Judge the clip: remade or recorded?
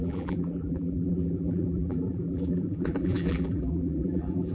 remade